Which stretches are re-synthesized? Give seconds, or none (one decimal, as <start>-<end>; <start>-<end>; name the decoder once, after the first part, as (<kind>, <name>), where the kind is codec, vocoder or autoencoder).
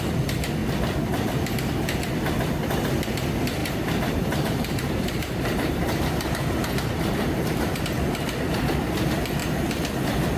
3.6-7.8 (vocoder, BigVGAN v2)